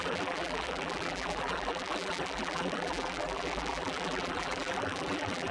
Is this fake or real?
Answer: fake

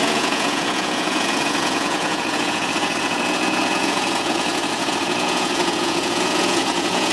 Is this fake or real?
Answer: fake